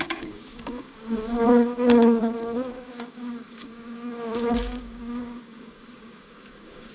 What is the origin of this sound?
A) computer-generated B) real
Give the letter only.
A